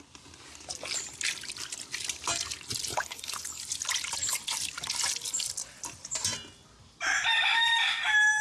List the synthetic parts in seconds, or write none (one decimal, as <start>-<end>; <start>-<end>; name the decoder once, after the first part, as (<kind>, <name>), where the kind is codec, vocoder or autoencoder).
2.9-3.6 (codec, HILCodec)